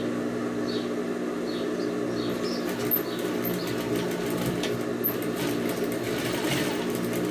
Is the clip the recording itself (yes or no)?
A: yes